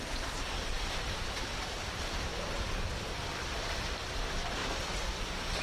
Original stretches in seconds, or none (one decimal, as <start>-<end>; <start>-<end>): 2.3-3.5; 4.6-5.6